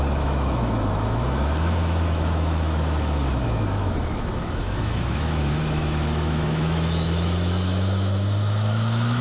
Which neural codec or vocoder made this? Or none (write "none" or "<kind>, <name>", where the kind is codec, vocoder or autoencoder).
autoencoder, DAC-VAE